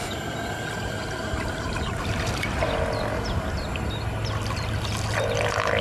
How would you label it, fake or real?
real